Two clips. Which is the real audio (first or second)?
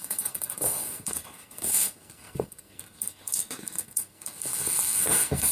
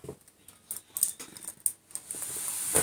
second